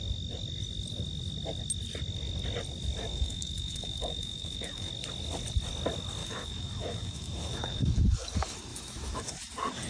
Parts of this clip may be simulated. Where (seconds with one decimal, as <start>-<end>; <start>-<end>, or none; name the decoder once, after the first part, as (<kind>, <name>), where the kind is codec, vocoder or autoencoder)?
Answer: 3.1-4.9 (autoencoder, DAC-VAE); 6.2-7.8; 8.7-9.2